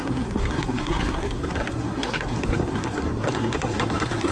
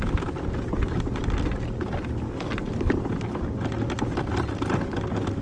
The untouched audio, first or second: second